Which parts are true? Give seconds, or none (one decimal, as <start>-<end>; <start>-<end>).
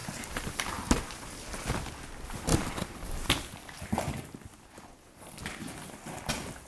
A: 1.2-2.5; 3.3-6.7